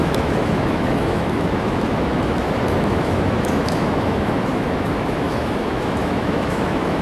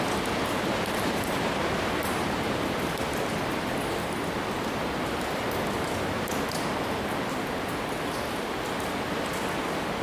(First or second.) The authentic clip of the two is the second